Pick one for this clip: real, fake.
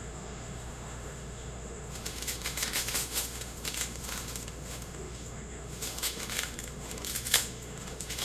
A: fake